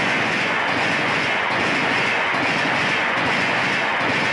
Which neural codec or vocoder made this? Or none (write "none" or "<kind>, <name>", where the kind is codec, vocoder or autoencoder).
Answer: vocoder, Vocos